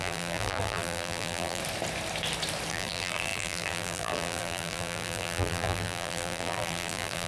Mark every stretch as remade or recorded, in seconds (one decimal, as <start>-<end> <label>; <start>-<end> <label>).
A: 0.0-1.6 remade; 1.6-2.7 recorded; 2.7-7.3 remade